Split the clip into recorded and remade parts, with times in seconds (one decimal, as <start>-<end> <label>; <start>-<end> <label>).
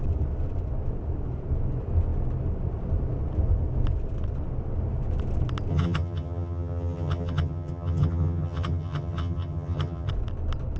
0.0-5.7 recorded; 5.7-10.1 remade; 10.1-10.8 recorded